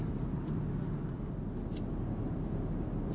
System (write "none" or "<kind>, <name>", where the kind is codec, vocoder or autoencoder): none